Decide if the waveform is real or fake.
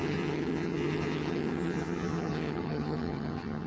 fake